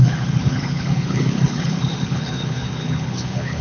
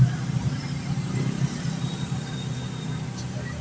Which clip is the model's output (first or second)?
first